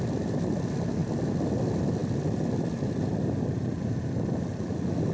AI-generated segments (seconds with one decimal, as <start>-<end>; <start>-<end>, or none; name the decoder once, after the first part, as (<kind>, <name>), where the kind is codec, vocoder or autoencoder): none